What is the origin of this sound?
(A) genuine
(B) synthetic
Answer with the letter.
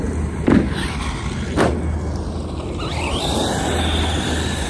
A